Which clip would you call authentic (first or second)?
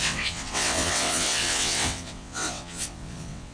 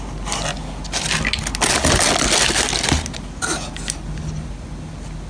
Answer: second